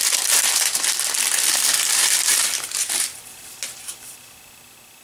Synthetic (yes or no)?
yes